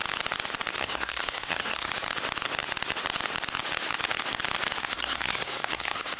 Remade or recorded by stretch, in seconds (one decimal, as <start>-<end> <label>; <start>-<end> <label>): 0.0-0.8 recorded; 0.8-1.9 remade; 1.9-4.8 recorded; 4.8-6.2 remade